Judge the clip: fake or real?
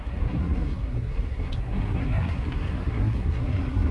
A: fake